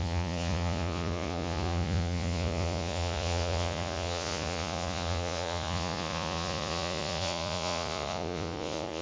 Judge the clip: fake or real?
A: fake